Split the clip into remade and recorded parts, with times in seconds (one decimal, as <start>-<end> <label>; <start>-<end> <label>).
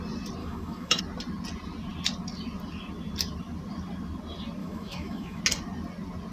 0.0-0.4 recorded; 0.4-1.0 remade; 1.0-4.6 recorded; 4.6-5.4 remade; 5.4-6.3 recorded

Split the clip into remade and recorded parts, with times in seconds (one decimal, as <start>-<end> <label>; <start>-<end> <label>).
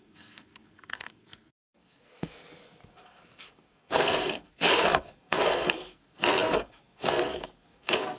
0.0-8.2 remade